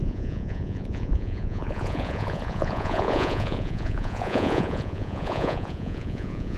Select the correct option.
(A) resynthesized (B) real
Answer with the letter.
A